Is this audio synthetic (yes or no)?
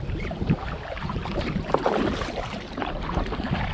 yes